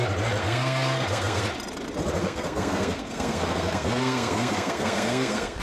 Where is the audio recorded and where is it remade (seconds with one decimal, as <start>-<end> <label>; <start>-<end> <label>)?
0.0-0.4 recorded; 0.4-1.4 remade; 1.4-2.2 recorded; 2.2-5.6 remade